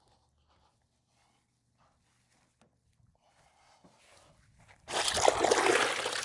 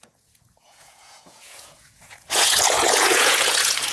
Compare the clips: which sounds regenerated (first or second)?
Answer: second